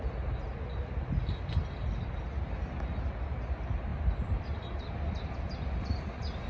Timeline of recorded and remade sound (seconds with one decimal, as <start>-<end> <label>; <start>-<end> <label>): 0.0-6.5 recorded